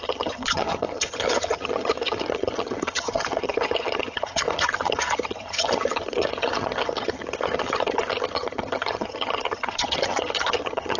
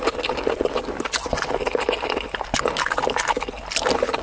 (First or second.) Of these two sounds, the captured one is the second